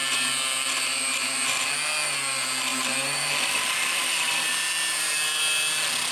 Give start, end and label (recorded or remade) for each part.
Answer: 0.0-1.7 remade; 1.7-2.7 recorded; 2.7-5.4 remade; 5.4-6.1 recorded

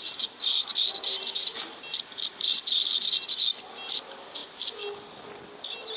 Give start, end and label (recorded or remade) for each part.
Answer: 0.0-6.0 recorded

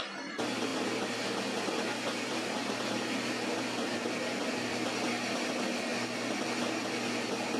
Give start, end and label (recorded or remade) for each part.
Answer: 0.0-7.6 recorded

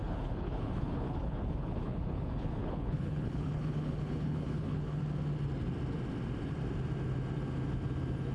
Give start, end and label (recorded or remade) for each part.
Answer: 0.0-5.0 remade; 5.0-8.3 recorded

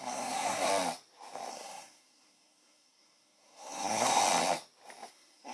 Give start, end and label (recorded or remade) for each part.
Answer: 0.0-0.7 remade; 0.7-1.5 recorded; 1.5-4.2 remade; 4.2-5.1 recorded; 5.1-5.5 remade